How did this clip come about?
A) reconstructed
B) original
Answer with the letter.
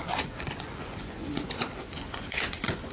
A